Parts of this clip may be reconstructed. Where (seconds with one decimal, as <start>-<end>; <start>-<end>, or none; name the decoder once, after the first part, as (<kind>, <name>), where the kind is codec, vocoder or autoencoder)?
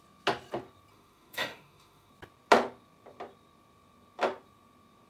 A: 0.9-2.1 (autoencoder, DAC-VAE)